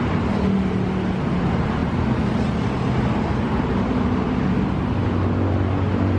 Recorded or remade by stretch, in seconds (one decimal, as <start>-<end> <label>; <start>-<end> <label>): 0.0-6.2 recorded